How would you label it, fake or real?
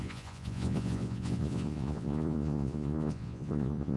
fake